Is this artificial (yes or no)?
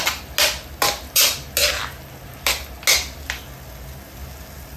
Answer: no